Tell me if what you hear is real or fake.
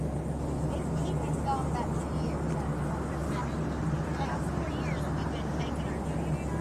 real